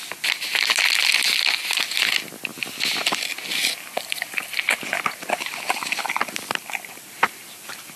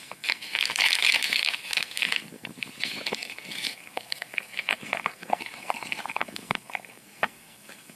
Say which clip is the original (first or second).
first